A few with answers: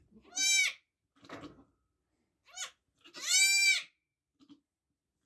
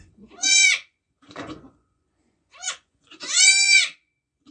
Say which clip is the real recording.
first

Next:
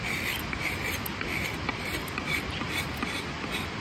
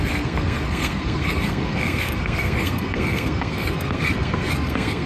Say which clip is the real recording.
first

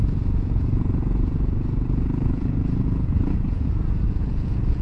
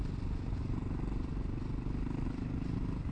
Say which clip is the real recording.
second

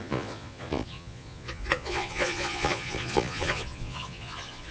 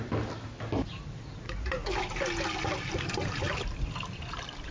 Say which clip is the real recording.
second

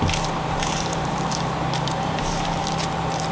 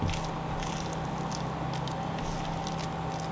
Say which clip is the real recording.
second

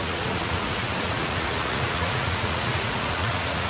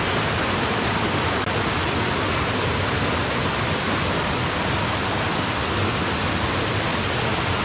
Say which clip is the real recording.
second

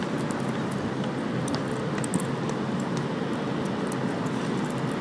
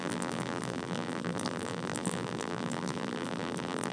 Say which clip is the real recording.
first